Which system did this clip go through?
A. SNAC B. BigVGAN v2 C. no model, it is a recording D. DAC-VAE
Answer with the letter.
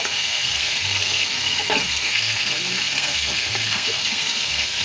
A